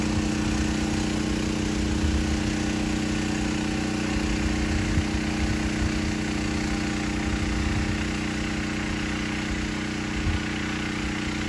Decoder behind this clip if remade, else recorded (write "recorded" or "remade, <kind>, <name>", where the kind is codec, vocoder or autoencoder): recorded